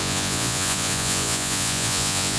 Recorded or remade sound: remade